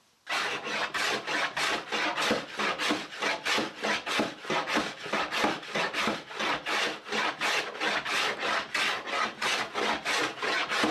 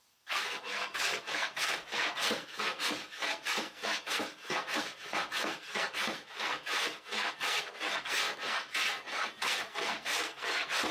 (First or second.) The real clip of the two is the first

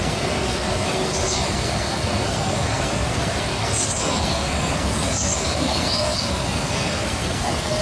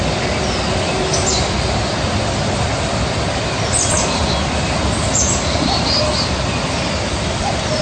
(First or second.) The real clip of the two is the second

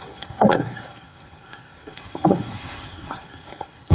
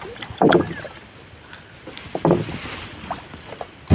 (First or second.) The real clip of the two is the second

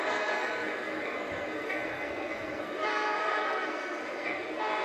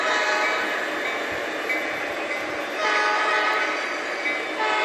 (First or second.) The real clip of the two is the second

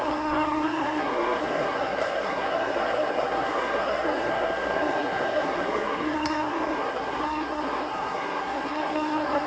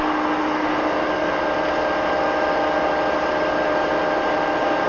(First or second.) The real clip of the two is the second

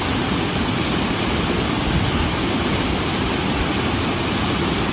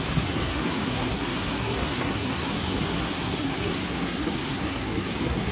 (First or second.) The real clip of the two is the first